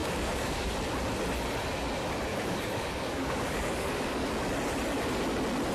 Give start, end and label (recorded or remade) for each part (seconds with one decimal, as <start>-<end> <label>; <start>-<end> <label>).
0.0-0.7 remade; 0.7-2.3 recorded; 2.3-4.3 remade; 4.3-5.7 recorded